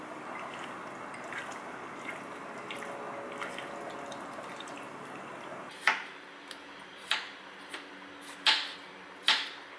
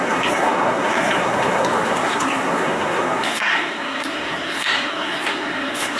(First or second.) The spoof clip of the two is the second